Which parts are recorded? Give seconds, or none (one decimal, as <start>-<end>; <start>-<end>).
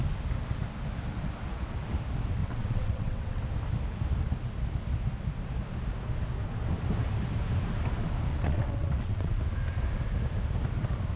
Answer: 0.0-2.4; 3.4-8.3; 9.4-11.2